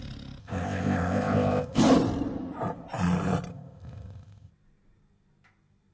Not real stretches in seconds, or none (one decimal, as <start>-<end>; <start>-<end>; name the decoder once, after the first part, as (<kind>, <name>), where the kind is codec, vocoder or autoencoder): 0.4-1.8 (codec, ZipCodec); 3.5-4.5